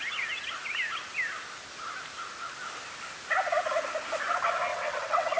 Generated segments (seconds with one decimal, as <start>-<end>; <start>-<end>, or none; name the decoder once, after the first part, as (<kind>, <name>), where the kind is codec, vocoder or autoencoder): 4.7-5.4 (vocoder, WaveNeXt)